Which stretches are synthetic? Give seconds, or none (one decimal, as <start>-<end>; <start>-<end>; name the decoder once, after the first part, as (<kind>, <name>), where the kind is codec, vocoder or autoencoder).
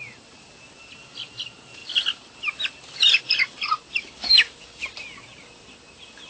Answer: none